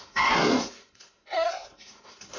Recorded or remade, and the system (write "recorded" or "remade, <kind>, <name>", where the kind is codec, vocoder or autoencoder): remade, codec, SNAC